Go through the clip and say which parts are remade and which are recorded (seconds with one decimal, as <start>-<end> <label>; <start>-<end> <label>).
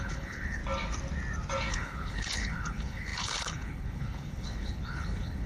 0.0-0.6 remade; 0.6-1.7 recorded; 1.7-5.5 remade